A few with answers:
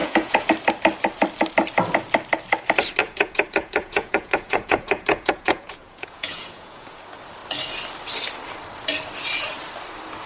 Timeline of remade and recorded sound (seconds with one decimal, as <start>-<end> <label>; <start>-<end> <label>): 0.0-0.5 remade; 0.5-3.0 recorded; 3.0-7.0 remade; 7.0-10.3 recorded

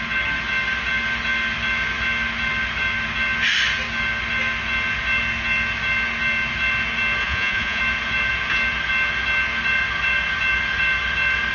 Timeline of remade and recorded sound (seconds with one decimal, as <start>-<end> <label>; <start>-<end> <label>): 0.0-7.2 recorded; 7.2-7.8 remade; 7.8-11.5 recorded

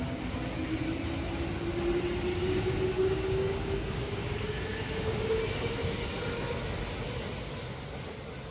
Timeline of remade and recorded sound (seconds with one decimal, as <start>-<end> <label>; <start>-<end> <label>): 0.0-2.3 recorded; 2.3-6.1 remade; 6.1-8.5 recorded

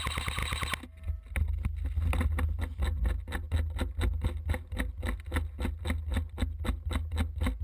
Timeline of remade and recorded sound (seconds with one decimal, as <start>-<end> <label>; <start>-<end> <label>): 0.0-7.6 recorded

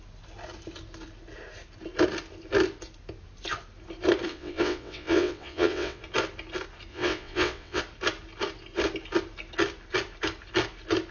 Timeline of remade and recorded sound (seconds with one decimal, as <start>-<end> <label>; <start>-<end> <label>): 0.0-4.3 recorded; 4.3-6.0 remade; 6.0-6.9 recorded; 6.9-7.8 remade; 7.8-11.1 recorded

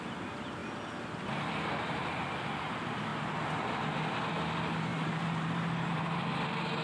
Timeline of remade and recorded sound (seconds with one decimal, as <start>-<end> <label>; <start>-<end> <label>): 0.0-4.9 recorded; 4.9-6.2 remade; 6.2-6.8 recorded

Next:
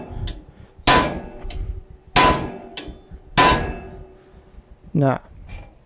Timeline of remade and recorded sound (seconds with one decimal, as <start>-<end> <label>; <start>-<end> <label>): 0.0-5.9 recorded